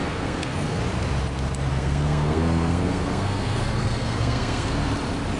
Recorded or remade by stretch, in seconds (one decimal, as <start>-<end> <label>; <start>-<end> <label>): 0.0-0.8 remade; 0.8-1.7 recorded; 1.7-4.9 remade; 4.9-5.4 recorded